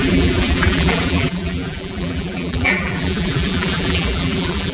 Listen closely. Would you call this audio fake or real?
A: fake